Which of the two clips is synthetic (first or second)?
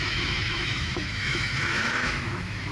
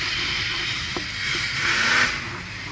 first